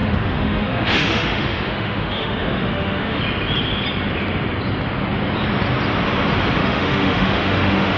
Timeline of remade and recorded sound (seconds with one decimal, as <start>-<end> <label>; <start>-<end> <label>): 0.0-3.2 remade; 3.2-6.6 recorded; 6.6-8.0 remade